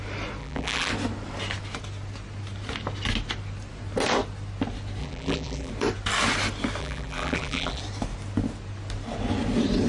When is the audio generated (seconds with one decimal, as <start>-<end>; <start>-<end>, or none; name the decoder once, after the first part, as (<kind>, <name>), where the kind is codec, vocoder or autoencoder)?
0.4-0.9 (vocoder, BigVGAN v2); 5.0-5.7; 6.8-7.8